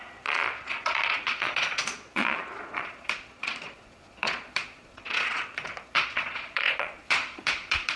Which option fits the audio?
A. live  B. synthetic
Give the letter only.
B